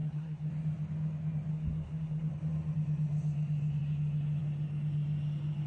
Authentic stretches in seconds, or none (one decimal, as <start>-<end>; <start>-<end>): 0.5-1.5; 2.3-5.7